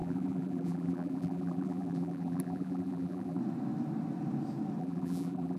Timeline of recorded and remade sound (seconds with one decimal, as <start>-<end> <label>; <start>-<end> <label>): 0.0-3.4 remade; 3.4-4.8 recorded; 4.8-5.6 remade